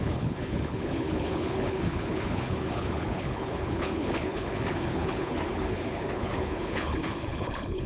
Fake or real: fake